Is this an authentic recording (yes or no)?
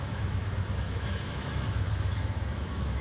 no